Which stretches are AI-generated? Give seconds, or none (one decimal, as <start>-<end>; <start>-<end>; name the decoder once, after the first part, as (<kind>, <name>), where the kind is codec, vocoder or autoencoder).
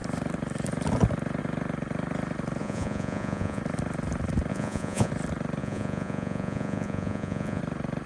2.6-3.6 (vocoder, Vocos); 4.5-5.1; 5.6-7.6